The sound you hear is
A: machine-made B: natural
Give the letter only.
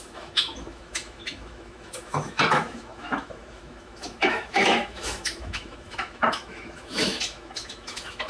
A